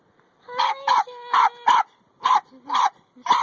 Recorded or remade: recorded